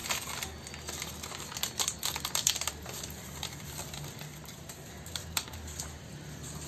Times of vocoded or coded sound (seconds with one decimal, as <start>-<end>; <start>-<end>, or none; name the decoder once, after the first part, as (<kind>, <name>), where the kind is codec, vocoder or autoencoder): 4.4-5.8 (vocoder, BigVGAN v2)